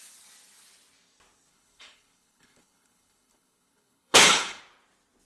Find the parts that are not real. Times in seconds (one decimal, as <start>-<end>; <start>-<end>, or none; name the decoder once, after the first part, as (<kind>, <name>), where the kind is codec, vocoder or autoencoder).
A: 1.5-4.6 (codec, HILCodec)